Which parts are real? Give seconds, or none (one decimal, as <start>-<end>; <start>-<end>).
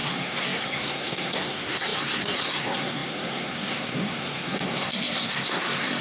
none